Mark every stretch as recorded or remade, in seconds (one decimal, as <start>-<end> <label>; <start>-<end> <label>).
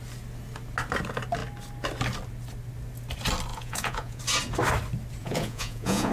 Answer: 0.0-3.5 recorded; 3.5-4.2 remade; 4.2-5.2 recorded; 5.2-6.1 remade